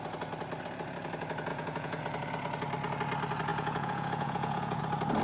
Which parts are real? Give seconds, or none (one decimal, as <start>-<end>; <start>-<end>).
0.0-1.5; 2.0-3.5; 4.8-5.2